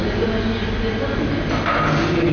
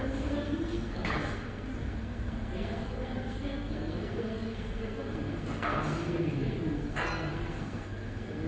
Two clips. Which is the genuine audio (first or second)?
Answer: first